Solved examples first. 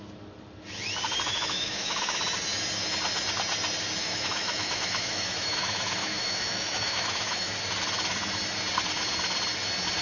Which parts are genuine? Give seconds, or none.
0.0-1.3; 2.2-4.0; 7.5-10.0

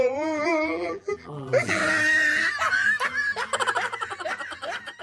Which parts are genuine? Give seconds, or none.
1.8-5.0

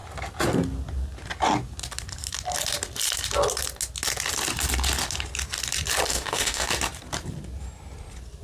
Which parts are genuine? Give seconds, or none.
0.0-6.1; 6.7-8.4

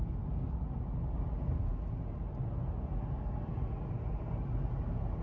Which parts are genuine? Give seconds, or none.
0.0-5.2

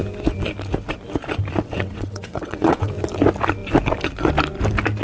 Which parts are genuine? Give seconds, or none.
0.0-1.6; 2.9-5.0

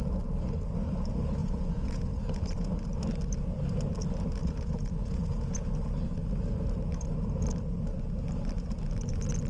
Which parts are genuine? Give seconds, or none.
0.0-1.4; 2.7-4.4; 5.7-9.5